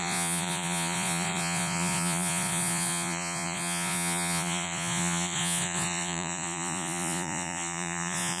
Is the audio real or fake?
fake